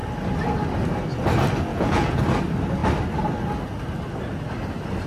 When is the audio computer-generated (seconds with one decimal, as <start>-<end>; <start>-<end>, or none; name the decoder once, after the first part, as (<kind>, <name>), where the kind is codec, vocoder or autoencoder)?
1.7-2.2 (vocoder, Vocos)